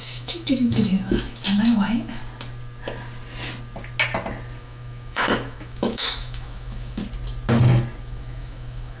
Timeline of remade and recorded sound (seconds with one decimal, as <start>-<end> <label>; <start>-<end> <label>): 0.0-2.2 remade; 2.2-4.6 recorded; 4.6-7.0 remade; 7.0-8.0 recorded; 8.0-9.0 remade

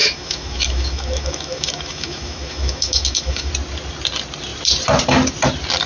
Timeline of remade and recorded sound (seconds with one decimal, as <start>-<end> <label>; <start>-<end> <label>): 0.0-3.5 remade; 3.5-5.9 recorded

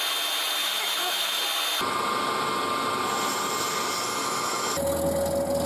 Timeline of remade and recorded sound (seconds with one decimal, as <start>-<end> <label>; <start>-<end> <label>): 0.0-0.6 recorded; 0.6-1.4 remade; 1.4-4.2 recorded; 4.2-4.7 remade; 4.7-5.7 recorded

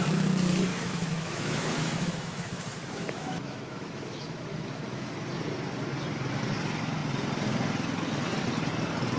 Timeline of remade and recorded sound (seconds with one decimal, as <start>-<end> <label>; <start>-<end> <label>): 0.0-0.7 recorded; 0.7-5.1 remade; 5.1-9.2 recorded